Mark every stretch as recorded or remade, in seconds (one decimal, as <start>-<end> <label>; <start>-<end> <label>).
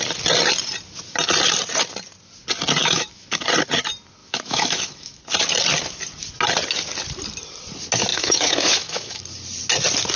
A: 0.0-2.8 recorded; 2.8-3.4 remade; 3.4-4.2 recorded; 4.2-5.2 remade; 5.2-8.1 recorded; 8.1-9.2 remade; 9.2-10.2 recorded